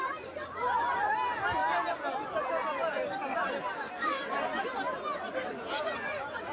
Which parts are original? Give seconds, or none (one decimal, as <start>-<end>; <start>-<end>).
0.0-6.5